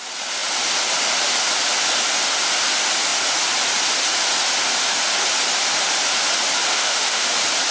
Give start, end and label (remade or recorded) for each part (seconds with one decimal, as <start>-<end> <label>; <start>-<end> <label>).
0.0-6.7 recorded; 6.7-7.3 remade; 7.3-7.7 recorded